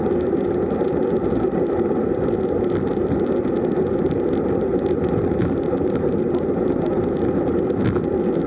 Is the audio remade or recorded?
recorded